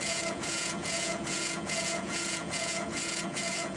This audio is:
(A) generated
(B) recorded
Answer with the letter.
A